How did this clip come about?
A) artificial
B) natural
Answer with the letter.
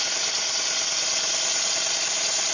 B